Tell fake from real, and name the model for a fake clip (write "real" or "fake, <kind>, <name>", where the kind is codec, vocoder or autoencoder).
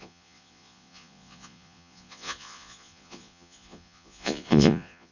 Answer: fake, vocoder, Vocos